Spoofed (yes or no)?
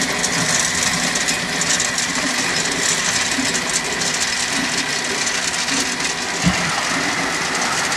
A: no